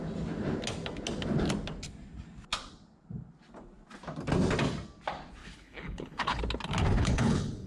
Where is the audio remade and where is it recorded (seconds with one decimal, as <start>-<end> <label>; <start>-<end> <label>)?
0.0-5.4 recorded; 5.4-6.4 remade; 6.4-7.0 recorded; 7.0-7.7 remade